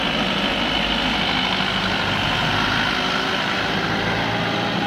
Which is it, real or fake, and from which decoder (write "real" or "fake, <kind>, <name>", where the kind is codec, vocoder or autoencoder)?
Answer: real